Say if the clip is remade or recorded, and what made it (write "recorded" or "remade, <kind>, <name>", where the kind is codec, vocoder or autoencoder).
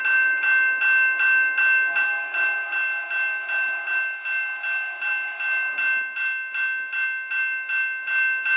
recorded